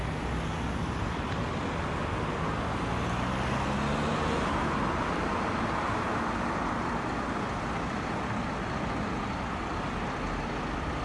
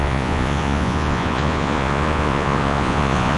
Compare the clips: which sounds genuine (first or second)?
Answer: first